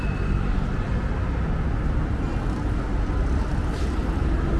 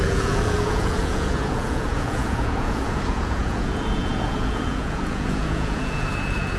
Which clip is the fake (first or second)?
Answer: second